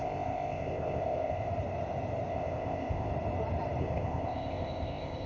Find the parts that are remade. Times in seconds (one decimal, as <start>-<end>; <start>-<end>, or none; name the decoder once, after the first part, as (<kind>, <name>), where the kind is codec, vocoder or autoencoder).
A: 0.0-1.5 (codec, ZipCodec); 2.3-3.1; 3.8-5.3